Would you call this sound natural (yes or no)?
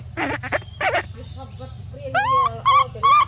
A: yes